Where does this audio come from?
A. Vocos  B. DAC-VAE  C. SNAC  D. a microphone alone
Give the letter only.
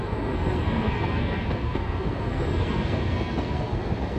C